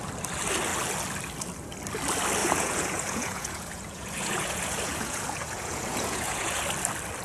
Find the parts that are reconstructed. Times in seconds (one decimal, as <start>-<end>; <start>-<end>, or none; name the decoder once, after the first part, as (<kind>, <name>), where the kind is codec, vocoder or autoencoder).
2.4-6.6 (vocoder, Vocos)